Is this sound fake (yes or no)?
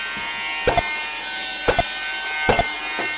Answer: no